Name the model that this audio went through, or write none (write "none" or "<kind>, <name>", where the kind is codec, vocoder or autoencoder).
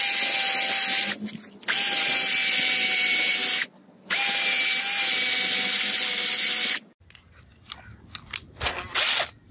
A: none